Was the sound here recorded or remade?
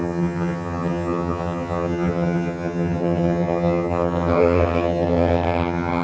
remade